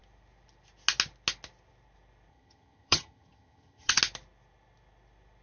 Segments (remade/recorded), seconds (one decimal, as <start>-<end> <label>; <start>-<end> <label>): 0.0-2.3 recorded; 2.3-4.0 remade; 4.0-5.4 recorded